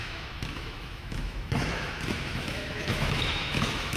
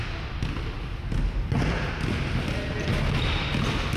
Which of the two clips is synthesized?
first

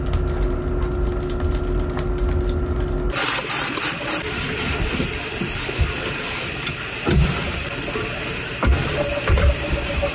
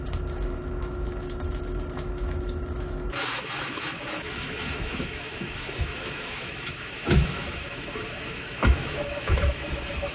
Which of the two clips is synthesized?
second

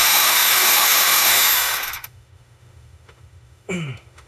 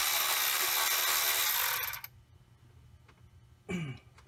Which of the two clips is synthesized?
first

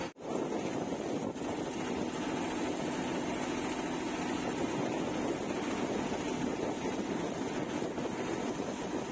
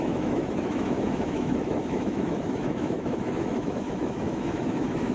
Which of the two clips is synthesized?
second